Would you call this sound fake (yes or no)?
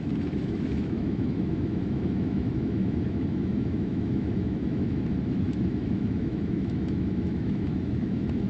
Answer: yes